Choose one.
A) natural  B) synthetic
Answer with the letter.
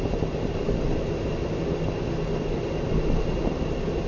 A